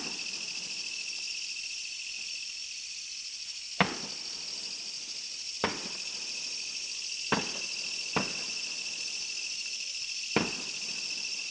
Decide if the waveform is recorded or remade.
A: recorded